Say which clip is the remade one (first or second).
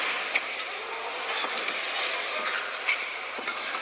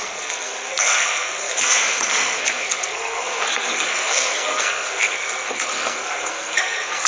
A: second